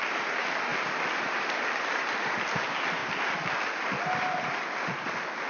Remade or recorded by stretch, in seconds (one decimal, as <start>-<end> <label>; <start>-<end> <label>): 0.0-0.7 recorded; 0.7-2.3 remade; 2.3-3.0 recorded; 3.0-4.0 remade; 4.0-5.5 recorded